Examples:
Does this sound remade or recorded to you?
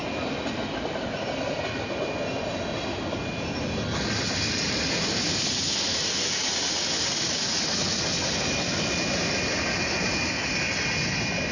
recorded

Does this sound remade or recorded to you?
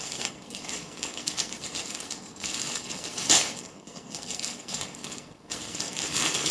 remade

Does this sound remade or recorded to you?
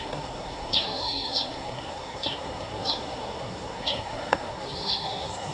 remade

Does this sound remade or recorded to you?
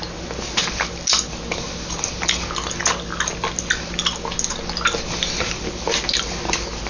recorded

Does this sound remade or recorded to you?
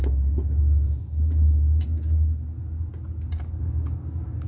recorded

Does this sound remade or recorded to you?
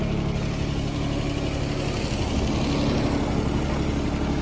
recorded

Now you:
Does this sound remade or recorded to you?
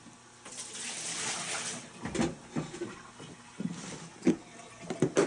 recorded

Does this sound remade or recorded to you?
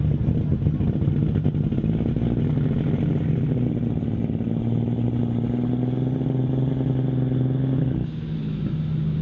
recorded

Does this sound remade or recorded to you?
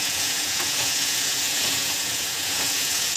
remade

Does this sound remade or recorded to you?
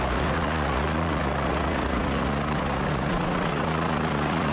remade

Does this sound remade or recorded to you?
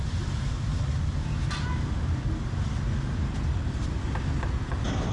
recorded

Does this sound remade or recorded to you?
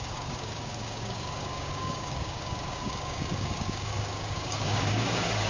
remade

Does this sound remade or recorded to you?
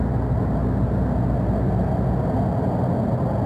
recorded